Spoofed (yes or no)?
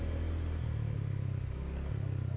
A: no